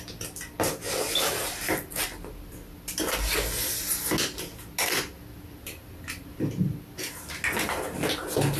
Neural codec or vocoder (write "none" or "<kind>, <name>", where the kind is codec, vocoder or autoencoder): none